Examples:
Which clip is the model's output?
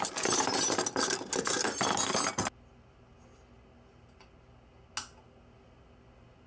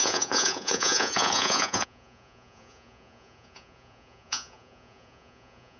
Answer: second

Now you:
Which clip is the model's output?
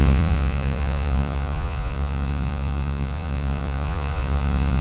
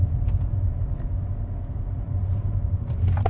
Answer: first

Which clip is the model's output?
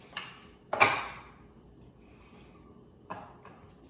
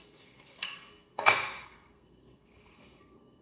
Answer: second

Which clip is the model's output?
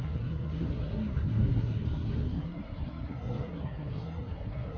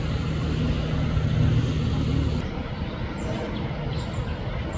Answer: first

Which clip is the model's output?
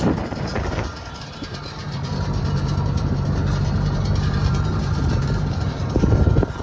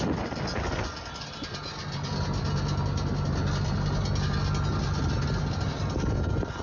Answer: first